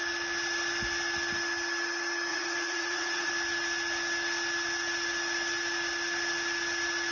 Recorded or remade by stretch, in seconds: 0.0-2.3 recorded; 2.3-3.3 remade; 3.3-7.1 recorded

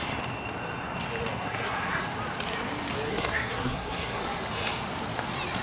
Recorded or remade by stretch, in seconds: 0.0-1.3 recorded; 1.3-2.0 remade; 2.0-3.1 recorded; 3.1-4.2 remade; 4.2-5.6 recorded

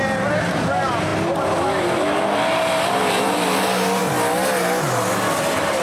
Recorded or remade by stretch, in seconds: 0.0-5.8 recorded

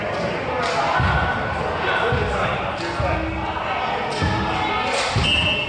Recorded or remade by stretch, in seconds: 0.0-5.7 recorded